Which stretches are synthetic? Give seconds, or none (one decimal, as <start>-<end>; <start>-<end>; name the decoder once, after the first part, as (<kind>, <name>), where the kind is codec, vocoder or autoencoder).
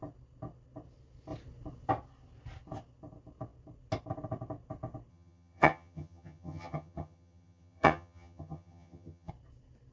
5.1-9.3 (vocoder, HiFi-GAN)